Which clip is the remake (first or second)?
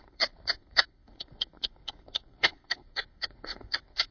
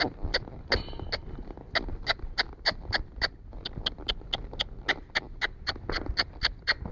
first